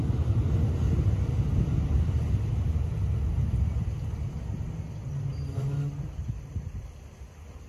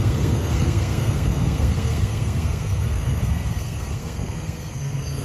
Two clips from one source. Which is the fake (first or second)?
second